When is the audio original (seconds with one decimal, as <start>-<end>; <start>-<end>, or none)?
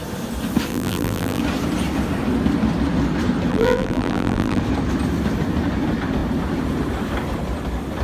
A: 0.0-0.7; 1.4-3.5; 4.6-8.0